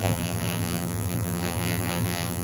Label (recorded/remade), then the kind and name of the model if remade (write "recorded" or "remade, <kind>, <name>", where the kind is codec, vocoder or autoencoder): remade, vocoder, BigVGAN v2